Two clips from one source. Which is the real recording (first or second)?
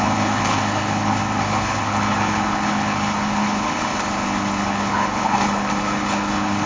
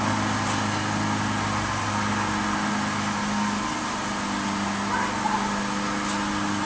second